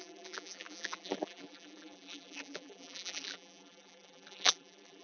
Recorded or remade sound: remade